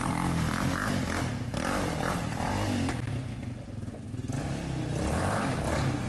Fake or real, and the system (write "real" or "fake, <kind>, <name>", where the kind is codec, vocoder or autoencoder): real